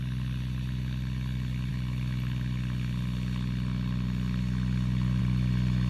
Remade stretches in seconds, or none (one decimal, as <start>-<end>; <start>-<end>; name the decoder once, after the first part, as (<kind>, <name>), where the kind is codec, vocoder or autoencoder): none